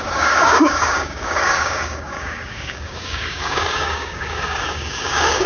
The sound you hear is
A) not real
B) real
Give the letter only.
A